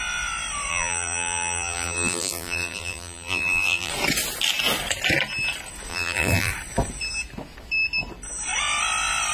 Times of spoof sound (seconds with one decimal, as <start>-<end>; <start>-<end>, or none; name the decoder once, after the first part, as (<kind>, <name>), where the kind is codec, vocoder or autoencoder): 0.7-3.9 (vocoder, BigVGAN v2); 5.9-6.5